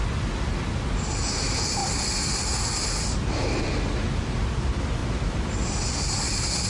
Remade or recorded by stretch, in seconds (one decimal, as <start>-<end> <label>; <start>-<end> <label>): 0.0-6.7 remade